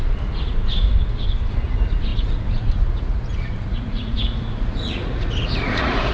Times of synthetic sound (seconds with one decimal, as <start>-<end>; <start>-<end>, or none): 0.0-0.9; 1.5-6.1